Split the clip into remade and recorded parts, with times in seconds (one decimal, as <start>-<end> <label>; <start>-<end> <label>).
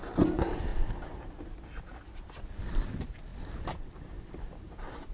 0.0-0.7 recorded; 0.7-1.4 remade; 1.4-3.3 recorded; 3.3-4.4 remade; 4.4-5.1 recorded